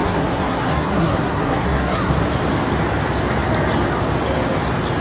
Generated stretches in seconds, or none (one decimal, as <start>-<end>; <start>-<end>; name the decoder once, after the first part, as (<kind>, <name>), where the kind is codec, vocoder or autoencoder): 0.0-2.1 (codec, SNAC)